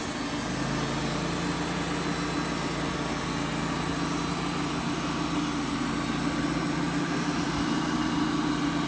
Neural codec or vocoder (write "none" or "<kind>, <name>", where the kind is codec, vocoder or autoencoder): none